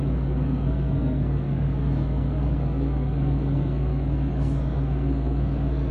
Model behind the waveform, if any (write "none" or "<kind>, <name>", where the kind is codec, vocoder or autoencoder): codec, SNAC